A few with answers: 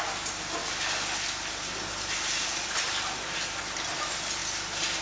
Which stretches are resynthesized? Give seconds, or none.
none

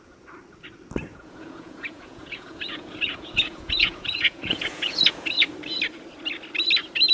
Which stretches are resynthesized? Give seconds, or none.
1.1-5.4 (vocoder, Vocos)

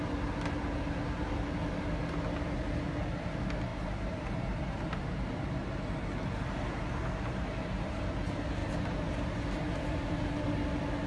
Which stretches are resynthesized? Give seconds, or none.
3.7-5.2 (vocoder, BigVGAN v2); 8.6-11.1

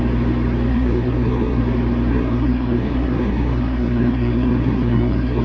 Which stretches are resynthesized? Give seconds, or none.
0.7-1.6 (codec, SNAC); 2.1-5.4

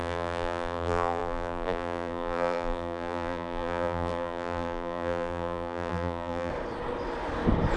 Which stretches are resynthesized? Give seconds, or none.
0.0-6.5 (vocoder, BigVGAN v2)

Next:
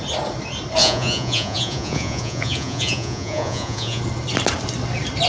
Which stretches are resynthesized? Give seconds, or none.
0.8-4.0 (vocoder, Vocos)

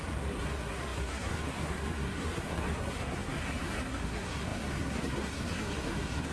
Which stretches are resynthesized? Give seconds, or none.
0.0-6.3 (codec, SNAC)